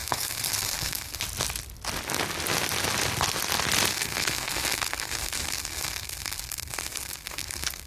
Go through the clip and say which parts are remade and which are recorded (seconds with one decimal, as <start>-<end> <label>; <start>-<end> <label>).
0.0-1.2 remade; 1.2-3.9 recorded; 3.9-7.9 remade